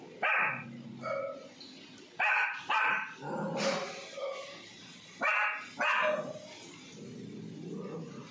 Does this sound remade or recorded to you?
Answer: recorded